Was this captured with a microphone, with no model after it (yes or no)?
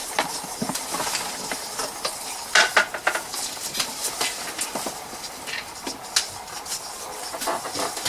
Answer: yes